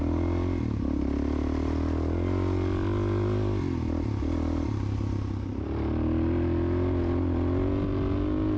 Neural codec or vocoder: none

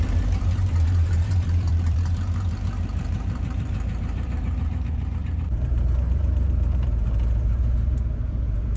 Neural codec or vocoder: vocoder, BigVGAN v2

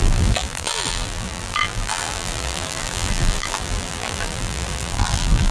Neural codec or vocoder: vocoder, BigVGAN v2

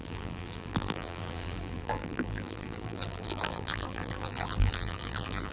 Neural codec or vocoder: vocoder, BigVGAN v2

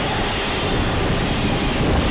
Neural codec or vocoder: none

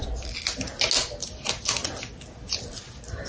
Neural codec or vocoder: none